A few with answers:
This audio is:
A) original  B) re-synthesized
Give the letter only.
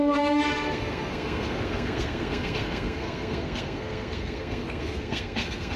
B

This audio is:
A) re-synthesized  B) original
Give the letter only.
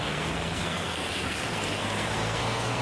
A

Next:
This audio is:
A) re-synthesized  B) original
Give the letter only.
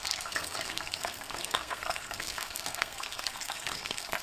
A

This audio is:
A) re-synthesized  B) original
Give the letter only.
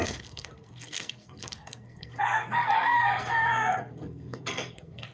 A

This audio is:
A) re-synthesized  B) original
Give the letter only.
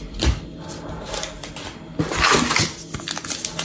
B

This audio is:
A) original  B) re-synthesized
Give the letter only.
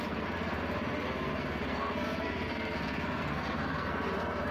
B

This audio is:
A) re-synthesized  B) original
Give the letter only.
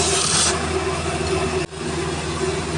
B